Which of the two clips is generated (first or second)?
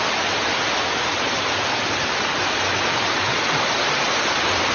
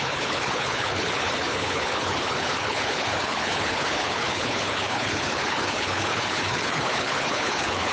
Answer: second